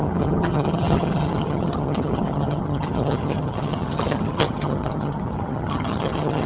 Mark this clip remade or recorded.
remade